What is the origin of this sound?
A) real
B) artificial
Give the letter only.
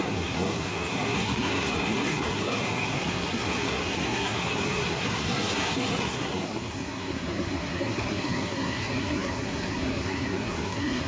B